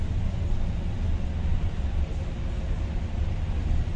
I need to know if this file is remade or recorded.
recorded